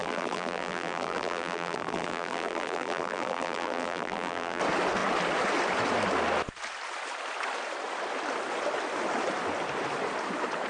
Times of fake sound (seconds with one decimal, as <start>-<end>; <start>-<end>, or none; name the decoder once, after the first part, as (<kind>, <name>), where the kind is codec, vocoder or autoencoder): 0.0-4.6 (vocoder, BigVGAN v2)